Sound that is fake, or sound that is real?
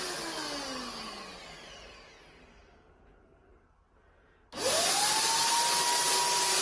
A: real